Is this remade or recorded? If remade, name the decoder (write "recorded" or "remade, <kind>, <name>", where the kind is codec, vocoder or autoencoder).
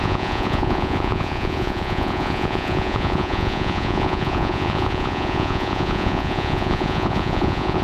remade, vocoder, Vocos